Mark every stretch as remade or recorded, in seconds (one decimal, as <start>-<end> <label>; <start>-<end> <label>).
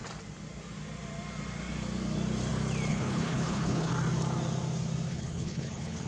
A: 0.0-2.9 recorded; 2.9-3.9 remade; 3.9-5.1 recorded; 5.1-6.1 remade